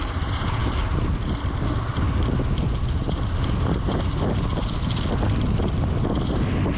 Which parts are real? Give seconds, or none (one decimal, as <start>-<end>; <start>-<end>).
0.0-6.8